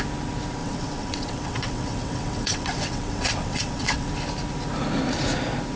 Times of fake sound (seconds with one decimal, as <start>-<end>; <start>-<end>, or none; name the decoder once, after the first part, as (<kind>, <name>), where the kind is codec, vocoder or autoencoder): 0.6-4.1 (vocoder, WaveNeXt)